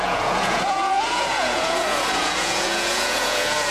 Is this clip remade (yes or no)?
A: yes